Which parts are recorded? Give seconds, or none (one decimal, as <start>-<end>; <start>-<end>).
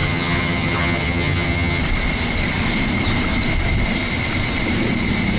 1.8-5.4